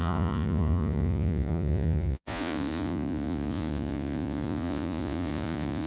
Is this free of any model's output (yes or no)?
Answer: no